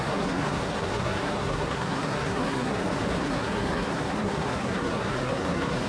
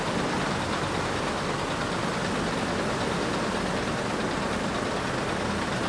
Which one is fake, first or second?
first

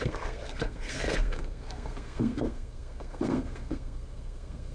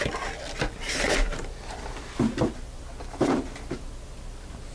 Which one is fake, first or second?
first